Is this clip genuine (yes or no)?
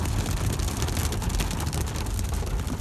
yes